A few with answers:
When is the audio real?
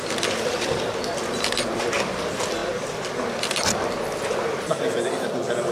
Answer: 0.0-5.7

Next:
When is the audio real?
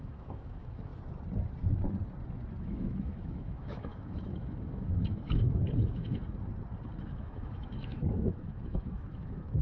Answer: 0.9-2.6; 6.2-7.0